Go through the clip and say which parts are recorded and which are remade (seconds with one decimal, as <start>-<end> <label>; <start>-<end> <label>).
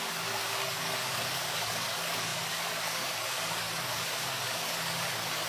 0.0-5.5 remade